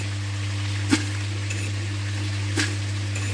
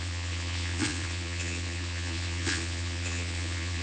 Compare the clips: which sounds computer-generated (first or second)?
second